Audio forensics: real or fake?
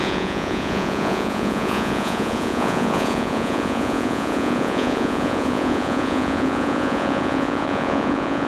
fake